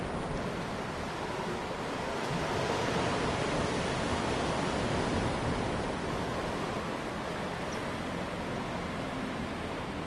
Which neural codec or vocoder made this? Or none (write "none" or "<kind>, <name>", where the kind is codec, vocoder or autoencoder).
none